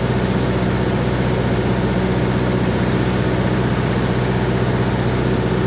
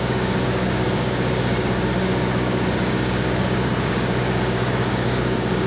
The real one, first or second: first